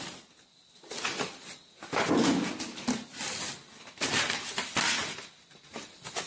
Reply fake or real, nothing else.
real